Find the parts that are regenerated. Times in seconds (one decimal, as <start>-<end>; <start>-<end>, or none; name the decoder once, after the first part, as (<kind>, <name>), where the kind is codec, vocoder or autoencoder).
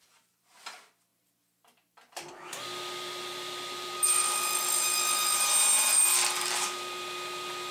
none